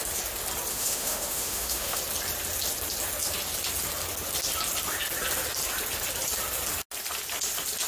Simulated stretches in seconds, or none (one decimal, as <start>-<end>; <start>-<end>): 0.7-2.0